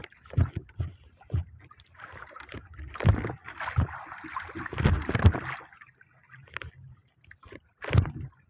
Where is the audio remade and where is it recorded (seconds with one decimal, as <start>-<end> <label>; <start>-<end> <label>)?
0.0-8.5 recorded